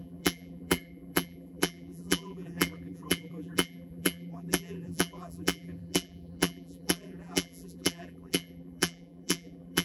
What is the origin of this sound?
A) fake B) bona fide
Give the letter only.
A